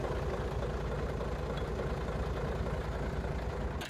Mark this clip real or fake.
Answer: real